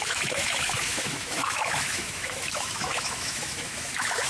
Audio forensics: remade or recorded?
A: remade